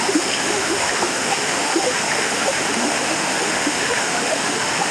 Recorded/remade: remade